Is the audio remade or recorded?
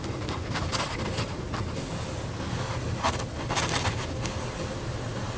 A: recorded